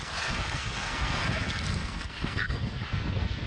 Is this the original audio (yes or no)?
no